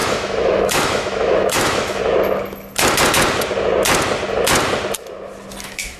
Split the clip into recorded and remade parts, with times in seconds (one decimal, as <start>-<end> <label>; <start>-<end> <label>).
0.0-2.0 remade; 2.0-5.6 recorded; 5.6-6.0 remade

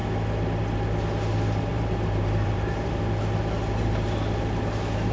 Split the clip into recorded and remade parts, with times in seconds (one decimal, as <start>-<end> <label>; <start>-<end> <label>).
0.0-1.7 recorded; 1.7-3.0 remade; 3.0-5.1 recorded

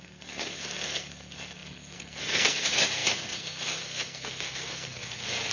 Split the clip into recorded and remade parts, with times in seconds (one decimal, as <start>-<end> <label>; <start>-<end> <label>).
0.0-5.5 remade

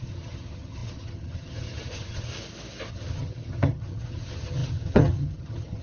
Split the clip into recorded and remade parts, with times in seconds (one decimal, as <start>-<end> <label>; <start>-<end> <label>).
0.0-2.3 remade; 2.3-2.9 recorded; 2.9-5.8 remade

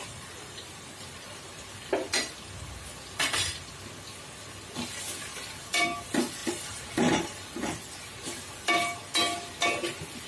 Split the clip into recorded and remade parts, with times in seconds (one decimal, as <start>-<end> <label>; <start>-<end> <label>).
0.0-6.4 recorded; 6.4-7.8 remade; 7.8-10.3 recorded

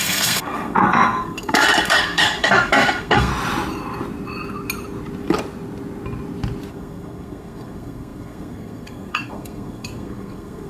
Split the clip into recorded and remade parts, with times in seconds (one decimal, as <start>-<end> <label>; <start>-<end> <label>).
0.0-3.3 remade; 3.3-6.7 recorded; 6.7-10.7 remade

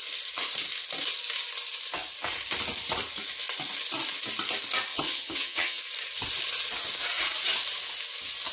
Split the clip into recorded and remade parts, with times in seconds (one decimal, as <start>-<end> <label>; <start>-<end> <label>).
0.0-4.9 recorded; 4.9-5.8 remade; 5.8-8.5 recorded